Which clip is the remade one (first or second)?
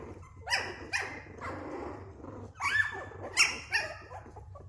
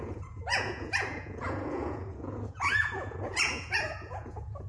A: second